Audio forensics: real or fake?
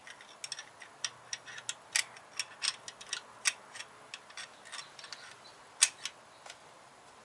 real